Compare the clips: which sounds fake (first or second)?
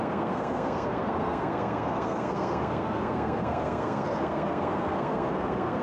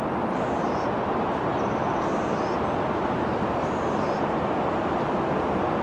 first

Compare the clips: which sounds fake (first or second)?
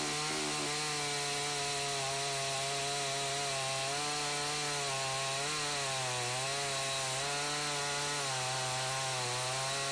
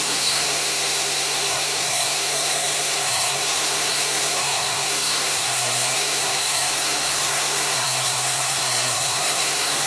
second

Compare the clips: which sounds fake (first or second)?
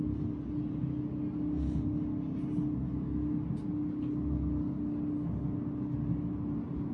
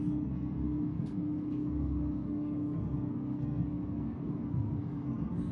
second